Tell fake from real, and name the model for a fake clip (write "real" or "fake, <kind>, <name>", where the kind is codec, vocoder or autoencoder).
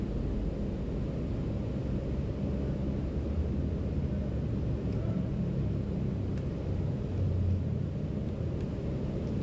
real